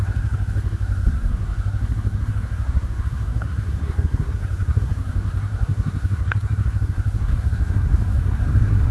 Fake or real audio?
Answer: fake